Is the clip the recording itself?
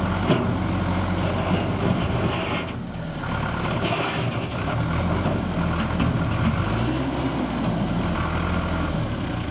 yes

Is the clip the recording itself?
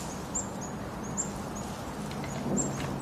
yes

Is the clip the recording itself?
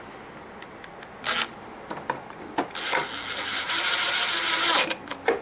yes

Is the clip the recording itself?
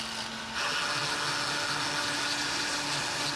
yes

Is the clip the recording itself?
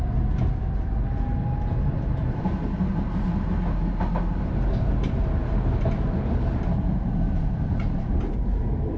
yes